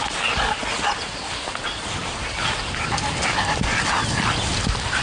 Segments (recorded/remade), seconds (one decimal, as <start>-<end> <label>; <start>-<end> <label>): 0.0-5.0 recorded